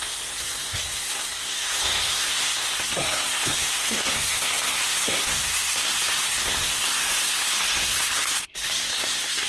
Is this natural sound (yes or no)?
no